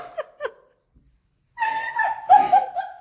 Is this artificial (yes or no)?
no